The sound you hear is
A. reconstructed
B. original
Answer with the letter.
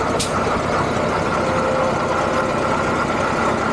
B